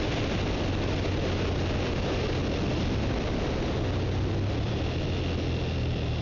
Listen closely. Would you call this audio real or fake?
real